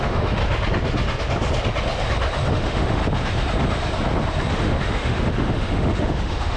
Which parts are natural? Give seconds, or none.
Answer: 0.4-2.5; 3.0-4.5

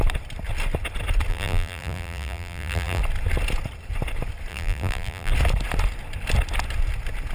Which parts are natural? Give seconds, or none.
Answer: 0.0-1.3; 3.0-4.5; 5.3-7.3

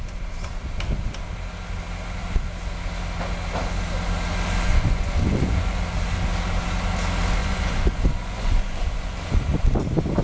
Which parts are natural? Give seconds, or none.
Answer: 0.0-4.7; 5.8-7.4; 9.2-10.2

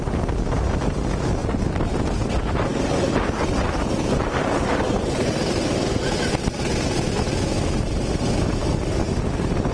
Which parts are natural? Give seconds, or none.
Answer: 0.0-9.7

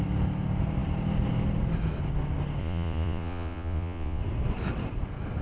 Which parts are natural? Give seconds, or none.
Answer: 0.0-2.6; 4.2-5.4

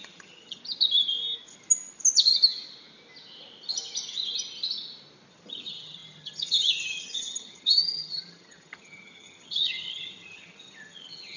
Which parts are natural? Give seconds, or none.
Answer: 0.6-5.3